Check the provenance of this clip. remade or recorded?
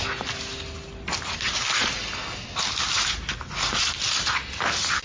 recorded